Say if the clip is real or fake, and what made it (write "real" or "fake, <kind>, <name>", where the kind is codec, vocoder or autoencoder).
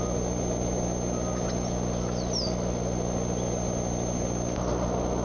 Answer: real